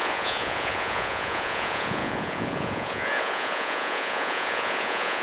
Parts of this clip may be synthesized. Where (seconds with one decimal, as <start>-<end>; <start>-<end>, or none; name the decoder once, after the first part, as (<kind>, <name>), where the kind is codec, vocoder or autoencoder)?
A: 0.0-5.2 (vocoder, Vocos)